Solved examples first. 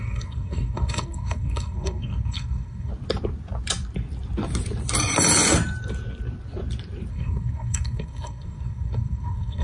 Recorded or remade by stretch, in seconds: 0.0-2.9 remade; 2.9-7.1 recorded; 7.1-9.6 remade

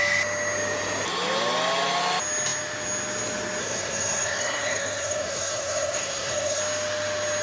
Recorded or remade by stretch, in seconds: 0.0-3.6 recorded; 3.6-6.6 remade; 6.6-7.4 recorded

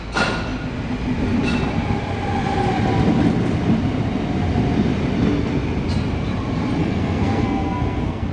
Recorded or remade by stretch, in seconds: 0.0-6.8 recorded; 6.8-8.3 remade

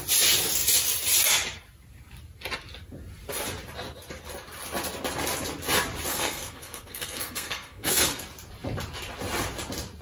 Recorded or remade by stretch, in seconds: 0.0-6.1 recorded; 6.1-8.2 remade; 8.2-10.0 recorded

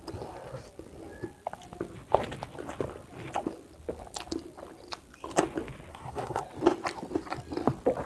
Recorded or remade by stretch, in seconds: 0.0-5.9 recorded; 5.9-6.4 remade; 6.4-8.1 recorded

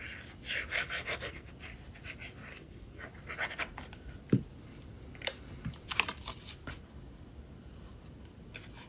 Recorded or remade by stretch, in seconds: 0.0-0.7 recorded; 0.7-1.5 remade; 1.5-2.5 recorded; 2.5-3.1 remade; 3.1-8.9 recorded